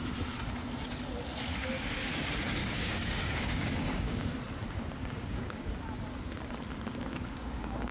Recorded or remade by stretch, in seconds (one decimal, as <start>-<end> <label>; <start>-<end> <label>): 0.0-2.6 recorded; 2.6-4.3 remade; 4.3-5.0 recorded; 5.0-5.7 remade; 5.7-7.1 recorded; 7.1-7.9 remade